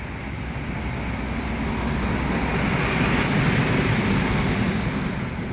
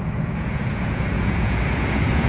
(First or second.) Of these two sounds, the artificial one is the second